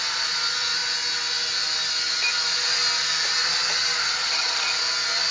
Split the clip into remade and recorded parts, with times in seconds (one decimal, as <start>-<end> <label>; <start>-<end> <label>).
0.0-4.2 recorded; 4.2-4.7 remade; 4.7-5.3 recorded